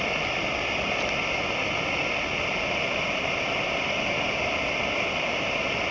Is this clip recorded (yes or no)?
yes